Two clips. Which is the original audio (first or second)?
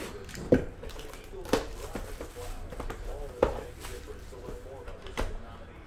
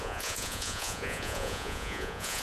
first